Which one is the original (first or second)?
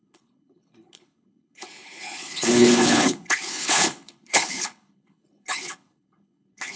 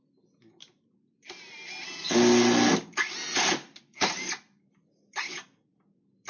second